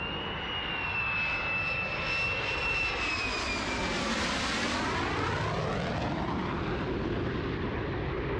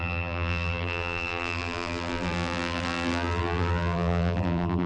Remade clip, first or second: second